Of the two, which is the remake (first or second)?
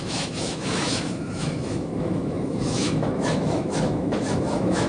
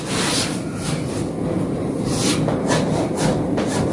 first